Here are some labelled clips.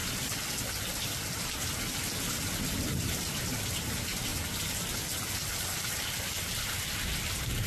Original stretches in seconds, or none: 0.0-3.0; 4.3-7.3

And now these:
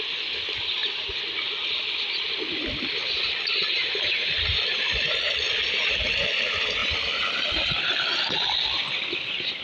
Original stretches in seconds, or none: 0.0-6.8; 7.8-9.6

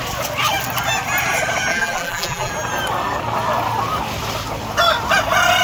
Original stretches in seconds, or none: 0.0-1.7; 2.5-5.6

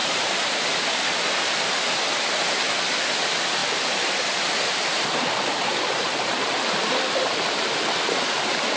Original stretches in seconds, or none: 0.5-1.1; 1.6-3.6; 8.2-8.8

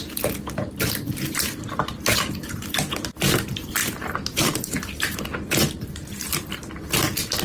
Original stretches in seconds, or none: 0.0-3.8; 5.2-7.4